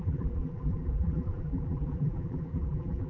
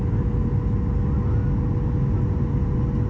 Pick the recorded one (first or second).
second